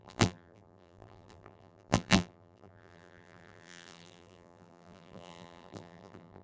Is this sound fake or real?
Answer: fake